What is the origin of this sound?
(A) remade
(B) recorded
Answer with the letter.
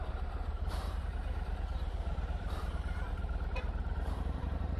A